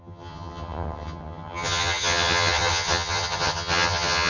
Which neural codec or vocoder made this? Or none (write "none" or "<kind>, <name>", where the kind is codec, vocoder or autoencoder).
vocoder, HiFi-GAN